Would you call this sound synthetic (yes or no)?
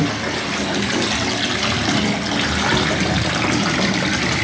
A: no